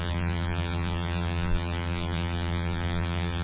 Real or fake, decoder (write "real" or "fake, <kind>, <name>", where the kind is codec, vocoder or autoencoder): fake, vocoder, BigVGAN v2